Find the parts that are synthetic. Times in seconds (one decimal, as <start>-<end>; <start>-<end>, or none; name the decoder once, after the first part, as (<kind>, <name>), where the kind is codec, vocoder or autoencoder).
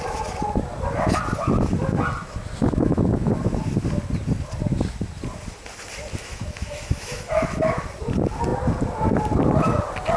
2.6-3.3 (autoencoder, DAC-VAE); 6.2-7.8